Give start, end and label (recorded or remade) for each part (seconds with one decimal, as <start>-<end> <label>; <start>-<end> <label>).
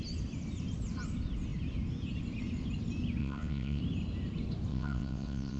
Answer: 0.0-3.2 recorded; 3.2-3.8 remade; 3.8-4.7 recorded; 4.7-5.6 remade